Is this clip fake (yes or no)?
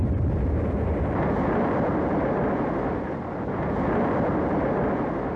no